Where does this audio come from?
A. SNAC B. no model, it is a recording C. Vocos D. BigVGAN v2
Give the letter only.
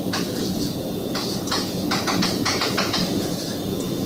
C